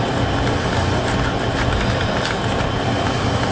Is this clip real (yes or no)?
yes